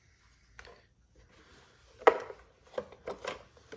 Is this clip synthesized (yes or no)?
no